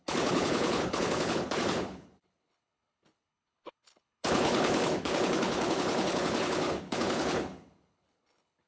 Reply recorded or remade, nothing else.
remade